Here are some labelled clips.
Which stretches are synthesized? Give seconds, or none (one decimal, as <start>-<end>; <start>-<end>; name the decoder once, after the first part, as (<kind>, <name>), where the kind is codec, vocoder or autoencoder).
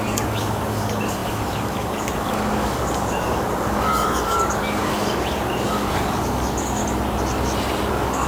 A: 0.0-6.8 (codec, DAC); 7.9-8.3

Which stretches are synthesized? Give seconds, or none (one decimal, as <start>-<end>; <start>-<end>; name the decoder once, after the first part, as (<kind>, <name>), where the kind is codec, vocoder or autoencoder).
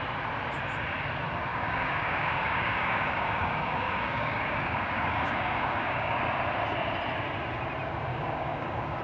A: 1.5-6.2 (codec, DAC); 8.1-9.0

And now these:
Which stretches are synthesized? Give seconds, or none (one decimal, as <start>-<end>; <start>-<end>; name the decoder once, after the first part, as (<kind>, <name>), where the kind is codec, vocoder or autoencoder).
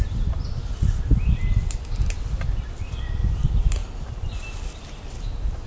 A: none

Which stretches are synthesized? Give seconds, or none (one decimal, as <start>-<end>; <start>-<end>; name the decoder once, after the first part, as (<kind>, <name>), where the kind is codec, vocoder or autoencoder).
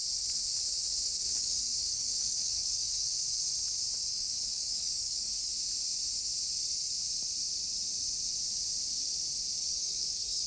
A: 1.2-3.1 (codec, DAC); 4.1-5.5; 9.7-10.5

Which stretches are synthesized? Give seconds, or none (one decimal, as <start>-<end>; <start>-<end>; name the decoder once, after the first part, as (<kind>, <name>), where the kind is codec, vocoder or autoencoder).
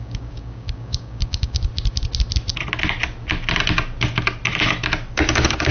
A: 0.0-1.7 (codec, DAC); 5.1-5.7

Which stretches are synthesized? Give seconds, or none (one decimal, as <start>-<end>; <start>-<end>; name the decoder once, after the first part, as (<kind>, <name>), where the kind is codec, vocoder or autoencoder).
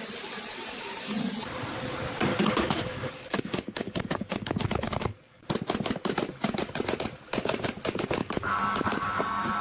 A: 2.3-5.5 (codec, DAC); 8.2-9.2